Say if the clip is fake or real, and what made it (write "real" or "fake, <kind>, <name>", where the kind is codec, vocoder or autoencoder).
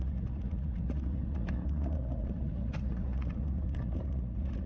fake, vocoder, Vocos